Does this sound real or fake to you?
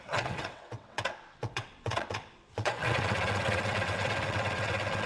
fake